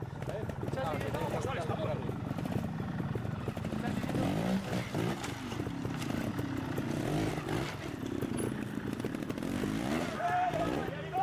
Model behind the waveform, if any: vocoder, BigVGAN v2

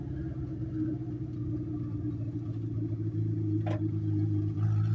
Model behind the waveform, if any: none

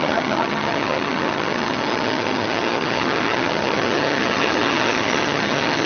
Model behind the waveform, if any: vocoder, HiFi-GAN